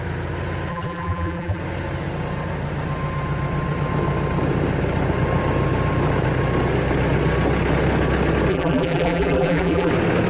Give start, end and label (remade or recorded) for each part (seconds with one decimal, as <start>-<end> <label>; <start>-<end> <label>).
0.0-0.7 recorded; 0.7-1.6 remade; 1.6-8.5 recorded; 8.5-9.9 remade; 9.9-10.3 recorded